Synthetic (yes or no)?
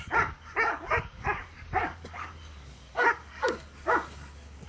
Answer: yes